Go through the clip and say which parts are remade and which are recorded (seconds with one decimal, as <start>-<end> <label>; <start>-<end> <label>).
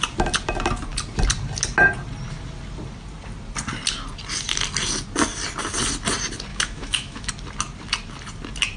0.0-6.5 recorded; 6.5-7.3 remade; 7.3-8.8 recorded